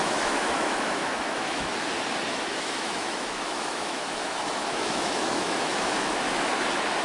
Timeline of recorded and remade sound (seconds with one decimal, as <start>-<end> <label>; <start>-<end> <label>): 0.0-1.7 remade; 1.7-2.3 recorded; 2.3-6.5 remade; 6.5-7.0 recorded